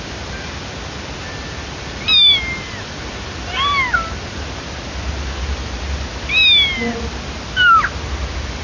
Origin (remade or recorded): recorded